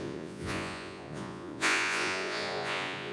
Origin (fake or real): fake